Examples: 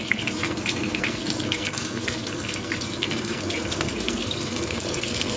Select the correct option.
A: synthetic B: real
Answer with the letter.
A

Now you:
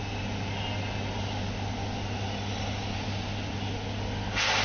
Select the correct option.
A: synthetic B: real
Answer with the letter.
B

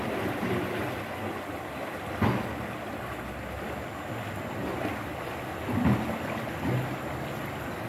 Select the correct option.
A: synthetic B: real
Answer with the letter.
B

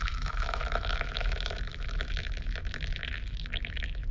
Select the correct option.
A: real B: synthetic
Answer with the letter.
B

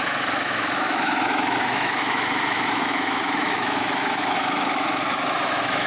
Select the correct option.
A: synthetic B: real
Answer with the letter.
A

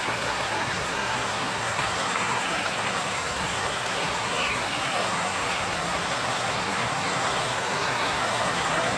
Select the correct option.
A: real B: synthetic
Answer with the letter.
B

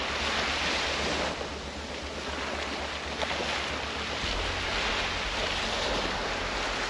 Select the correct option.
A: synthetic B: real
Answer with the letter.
B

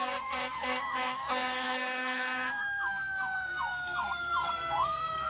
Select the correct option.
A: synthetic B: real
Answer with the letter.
A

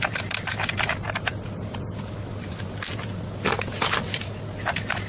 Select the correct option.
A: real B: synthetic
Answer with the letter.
A